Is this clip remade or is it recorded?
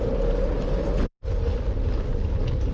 recorded